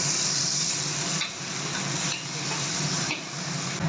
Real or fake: real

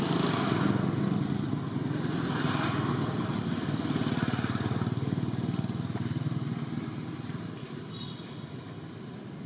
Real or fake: real